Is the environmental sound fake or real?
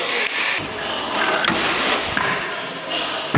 real